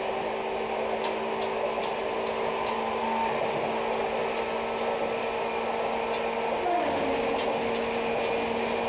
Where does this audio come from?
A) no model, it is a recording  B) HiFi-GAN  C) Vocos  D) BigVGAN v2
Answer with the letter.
A